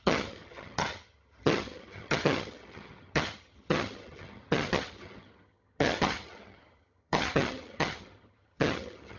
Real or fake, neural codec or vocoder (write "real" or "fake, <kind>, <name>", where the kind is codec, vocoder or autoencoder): fake, vocoder, HiFi-GAN